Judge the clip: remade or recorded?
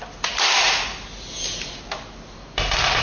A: recorded